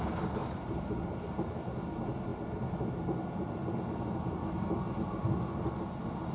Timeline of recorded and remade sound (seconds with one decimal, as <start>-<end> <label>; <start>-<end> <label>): 0.0-0.4 recorded; 0.4-0.9 remade; 0.9-6.3 recorded